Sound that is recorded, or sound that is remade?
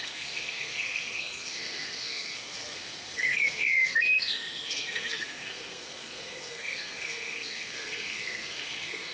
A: remade